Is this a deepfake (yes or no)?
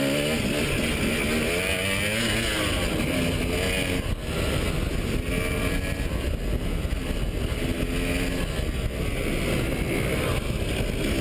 no